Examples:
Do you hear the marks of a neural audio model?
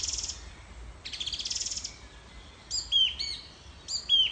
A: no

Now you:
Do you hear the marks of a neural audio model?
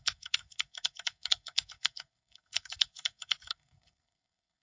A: yes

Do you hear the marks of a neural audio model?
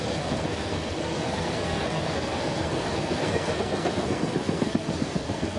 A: yes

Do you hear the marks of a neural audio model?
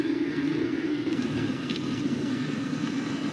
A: yes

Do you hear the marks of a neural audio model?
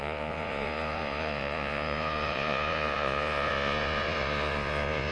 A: yes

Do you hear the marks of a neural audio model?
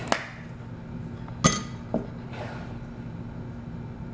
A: no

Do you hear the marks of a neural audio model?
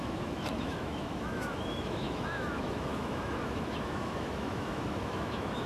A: yes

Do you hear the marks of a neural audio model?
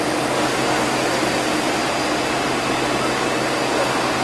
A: no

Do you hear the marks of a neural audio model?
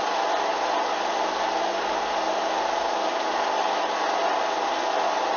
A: no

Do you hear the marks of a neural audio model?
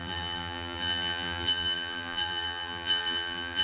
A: yes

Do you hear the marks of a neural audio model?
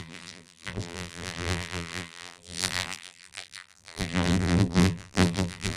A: yes